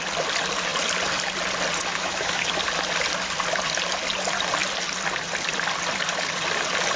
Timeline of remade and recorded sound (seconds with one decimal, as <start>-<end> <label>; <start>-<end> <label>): 0.0-1.9 recorded; 1.9-2.5 remade; 2.5-7.0 recorded